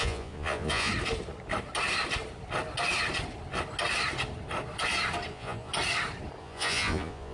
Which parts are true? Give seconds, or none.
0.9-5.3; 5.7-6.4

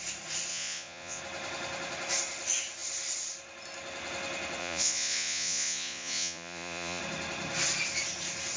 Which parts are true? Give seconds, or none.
0.0-0.5; 1.2-4.6; 7.0-8.6

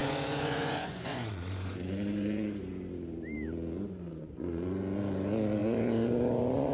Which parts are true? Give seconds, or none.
2.7-4.2; 4.8-5.6

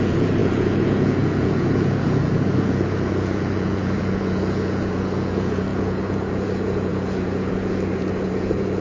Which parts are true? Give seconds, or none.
none

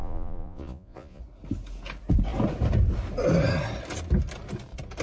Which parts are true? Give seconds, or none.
1.2-5.0

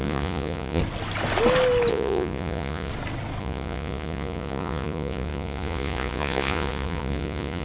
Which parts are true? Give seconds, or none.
0.8-1.9; 2.9-3.4

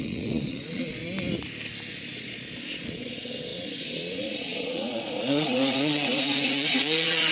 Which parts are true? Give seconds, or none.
1.0-1.9